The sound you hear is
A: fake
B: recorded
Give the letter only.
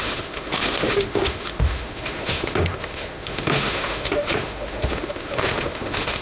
A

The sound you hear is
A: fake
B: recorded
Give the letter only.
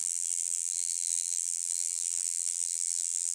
A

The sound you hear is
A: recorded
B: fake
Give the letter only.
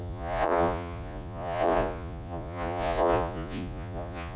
B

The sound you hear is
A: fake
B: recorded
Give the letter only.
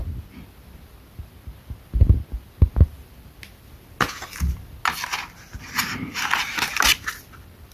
B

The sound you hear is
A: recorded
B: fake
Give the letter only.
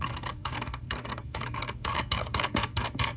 B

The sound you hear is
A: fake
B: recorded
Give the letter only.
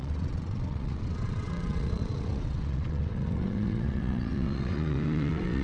A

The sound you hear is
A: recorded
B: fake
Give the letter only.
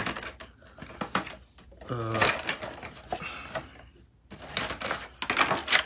A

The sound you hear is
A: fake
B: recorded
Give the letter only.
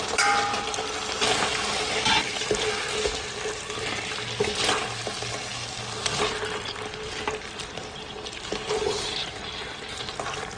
B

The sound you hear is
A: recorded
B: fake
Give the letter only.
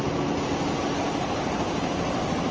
A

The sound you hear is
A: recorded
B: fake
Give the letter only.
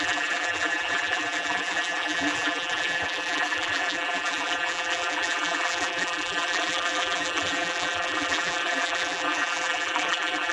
B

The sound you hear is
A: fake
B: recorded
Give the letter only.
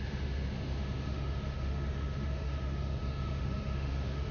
A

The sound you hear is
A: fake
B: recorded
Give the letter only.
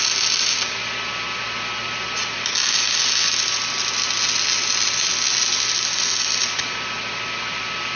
B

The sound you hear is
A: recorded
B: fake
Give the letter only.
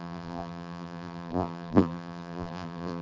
B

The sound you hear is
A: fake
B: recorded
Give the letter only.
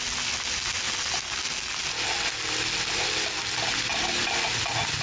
B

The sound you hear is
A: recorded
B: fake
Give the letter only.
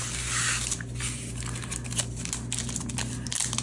A